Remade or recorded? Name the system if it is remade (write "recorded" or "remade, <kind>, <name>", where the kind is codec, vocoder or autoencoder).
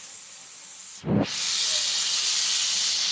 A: recorded